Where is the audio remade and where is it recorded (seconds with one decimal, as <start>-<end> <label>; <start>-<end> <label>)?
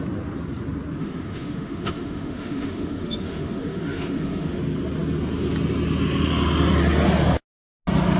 0.0-1.0 recorded; 1.0-4.6 remade; 4.6-8.2 recorded